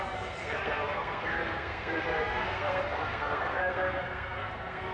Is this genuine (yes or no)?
no